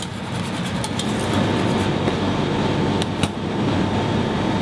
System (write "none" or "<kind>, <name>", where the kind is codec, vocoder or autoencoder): none